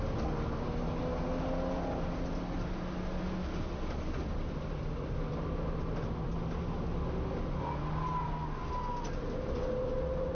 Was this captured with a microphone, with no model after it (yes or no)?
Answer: yes